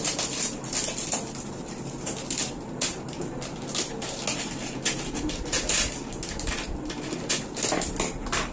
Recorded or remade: recorded